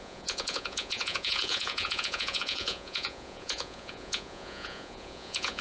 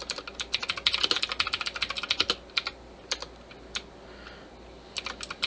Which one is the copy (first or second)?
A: first